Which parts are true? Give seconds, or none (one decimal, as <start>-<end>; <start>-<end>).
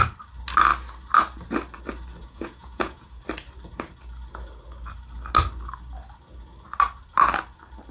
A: 0.0-2.2; 3.2-7.9